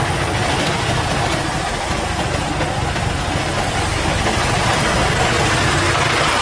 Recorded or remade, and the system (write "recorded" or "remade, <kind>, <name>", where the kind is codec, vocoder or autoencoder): recorded